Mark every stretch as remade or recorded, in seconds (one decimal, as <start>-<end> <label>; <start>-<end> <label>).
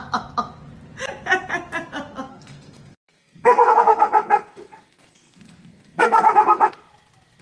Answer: 0.0-2.3 recorded; 2.3-6.7 remade; 6.7-7.4 recorded